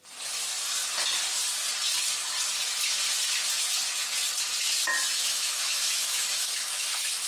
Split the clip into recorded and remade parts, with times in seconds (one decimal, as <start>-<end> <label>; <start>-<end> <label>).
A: 0.0-5.1 recorded; 5.1-7.3 remade